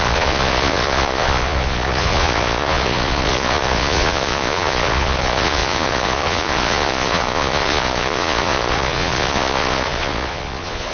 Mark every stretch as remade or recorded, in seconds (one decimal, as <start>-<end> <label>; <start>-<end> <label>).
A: 0.0-10.9 remade

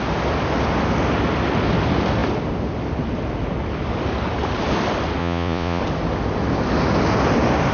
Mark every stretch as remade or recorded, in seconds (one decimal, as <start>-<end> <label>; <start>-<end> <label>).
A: 0.0-5.2 recorded; 5.2-5.8 remade; 5.8-7.7 recorded